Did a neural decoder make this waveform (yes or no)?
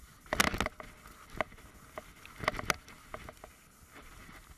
no